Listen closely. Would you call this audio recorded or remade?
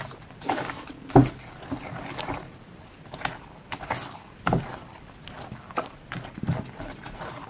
remade